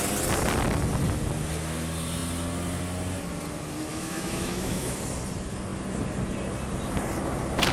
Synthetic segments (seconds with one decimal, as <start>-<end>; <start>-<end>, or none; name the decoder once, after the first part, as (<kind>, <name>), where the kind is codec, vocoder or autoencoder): 3.9-5.0 (autoencoder, DAC-VAE)